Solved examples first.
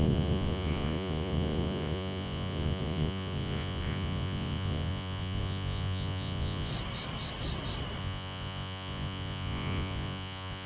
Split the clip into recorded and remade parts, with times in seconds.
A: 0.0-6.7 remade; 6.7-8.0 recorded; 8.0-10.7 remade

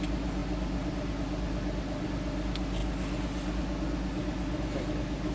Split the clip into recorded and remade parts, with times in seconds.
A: 0.0-5.3 recorded

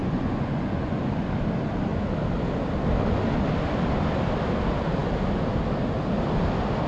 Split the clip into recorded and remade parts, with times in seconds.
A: 0.0-1.1 remade; 1.1-6.9 recorded

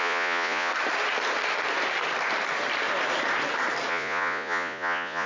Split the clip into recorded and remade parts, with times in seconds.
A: 0.0-0.7 remade; 0.7-3.9 recorded; 3.9-5.3 remade

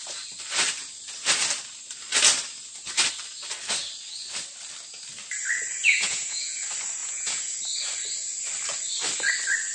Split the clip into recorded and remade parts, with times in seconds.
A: 0.0-5.8 recorded; 5.8-6.6 remade; 6.6-7.0 recorded; 7.0-7.6 remade; 7.6-9.7 recorded

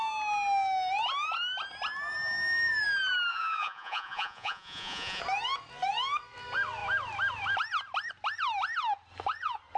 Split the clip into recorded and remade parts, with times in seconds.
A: 0.0-3.3 recorded; 3.3-5.2 remade; 5.2-9.8 recorded

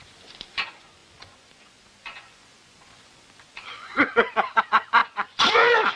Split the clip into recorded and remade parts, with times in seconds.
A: 0.0-6.0 remade